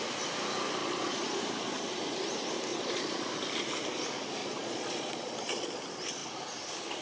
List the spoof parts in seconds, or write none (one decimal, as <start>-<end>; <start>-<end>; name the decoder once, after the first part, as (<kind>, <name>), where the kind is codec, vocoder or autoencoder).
0.8-1.4 (vocoder, Vocos); 2.7-3.3; 4.4-5.8